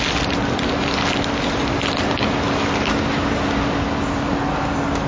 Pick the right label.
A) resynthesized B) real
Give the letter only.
B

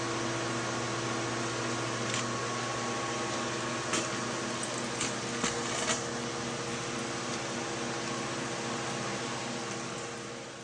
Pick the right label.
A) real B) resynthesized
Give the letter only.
A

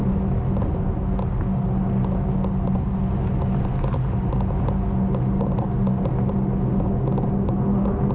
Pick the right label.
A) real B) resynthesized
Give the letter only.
A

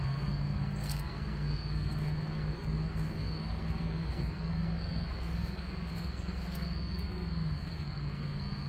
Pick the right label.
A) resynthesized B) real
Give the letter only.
A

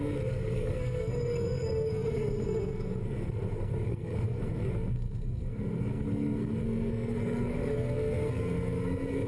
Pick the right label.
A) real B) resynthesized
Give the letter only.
B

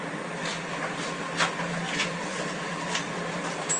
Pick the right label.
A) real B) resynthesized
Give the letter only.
A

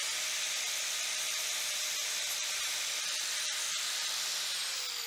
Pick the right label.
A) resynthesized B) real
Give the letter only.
B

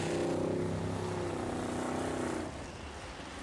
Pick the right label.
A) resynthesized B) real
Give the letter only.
B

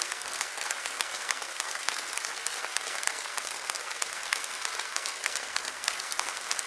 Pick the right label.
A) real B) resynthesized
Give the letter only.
B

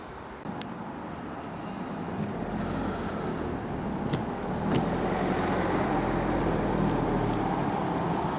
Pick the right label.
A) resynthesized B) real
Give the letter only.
B